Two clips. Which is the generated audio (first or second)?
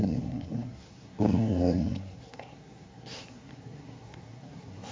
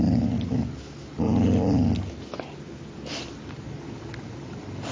first